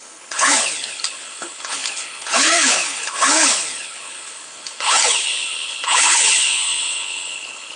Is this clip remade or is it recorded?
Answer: remade